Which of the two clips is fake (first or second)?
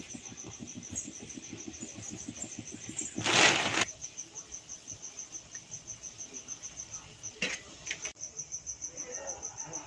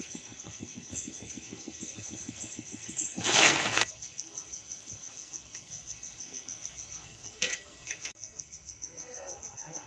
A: second